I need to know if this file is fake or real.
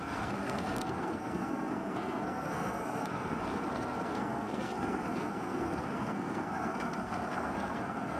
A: fake